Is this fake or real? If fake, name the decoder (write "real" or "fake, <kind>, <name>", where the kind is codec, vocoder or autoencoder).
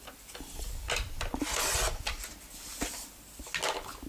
real